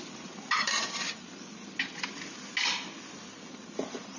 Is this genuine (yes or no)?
yes